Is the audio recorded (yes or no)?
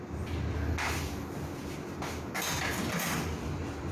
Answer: yes